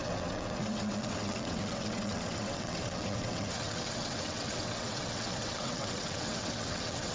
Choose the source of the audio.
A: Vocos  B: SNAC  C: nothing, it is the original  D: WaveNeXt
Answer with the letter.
D